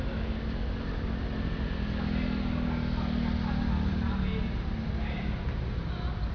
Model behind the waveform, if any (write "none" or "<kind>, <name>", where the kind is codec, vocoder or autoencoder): none